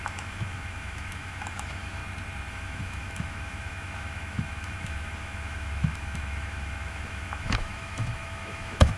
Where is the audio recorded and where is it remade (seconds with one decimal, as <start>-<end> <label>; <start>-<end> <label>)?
0.0-2.0 remade; 2.0-2.5 recorded; 2.5-9.0 remade